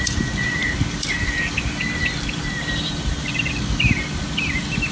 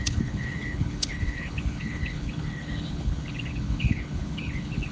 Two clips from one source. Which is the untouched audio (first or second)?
first